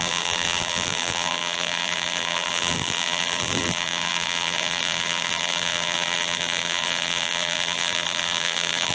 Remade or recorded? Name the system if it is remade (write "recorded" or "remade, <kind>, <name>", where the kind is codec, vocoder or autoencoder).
remade, vocoder, BigVGAN v2